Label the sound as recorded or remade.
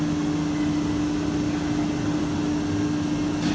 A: recorded